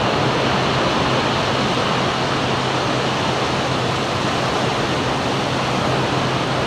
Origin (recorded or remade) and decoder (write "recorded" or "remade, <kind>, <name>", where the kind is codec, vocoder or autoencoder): recorded